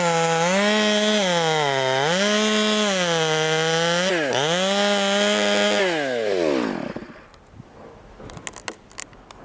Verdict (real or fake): real